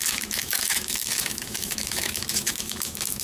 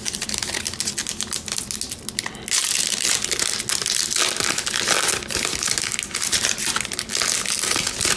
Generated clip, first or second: first